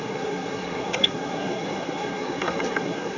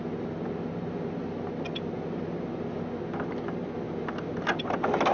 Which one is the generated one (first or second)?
first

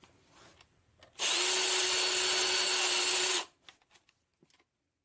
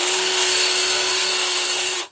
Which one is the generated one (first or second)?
second